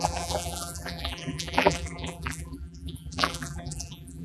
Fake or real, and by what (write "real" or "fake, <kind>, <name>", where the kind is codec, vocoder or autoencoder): fake, vocoder, BigVGAN v2